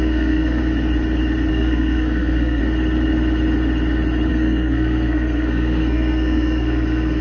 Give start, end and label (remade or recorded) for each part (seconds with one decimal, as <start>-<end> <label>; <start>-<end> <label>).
0.0-0.6 remade; 0.6-1.5 recorded; 1.5-2.6 remade; 2.6-4.3 recorded; 4.3-7.2 remade